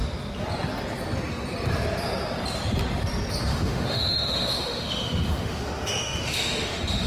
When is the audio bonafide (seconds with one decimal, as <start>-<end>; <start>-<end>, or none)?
0.0-3.5